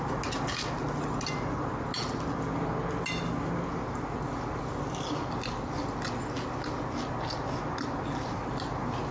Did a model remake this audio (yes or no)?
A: no